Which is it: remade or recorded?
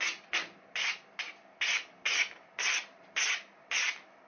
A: recorded